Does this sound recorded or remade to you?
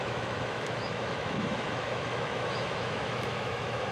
remade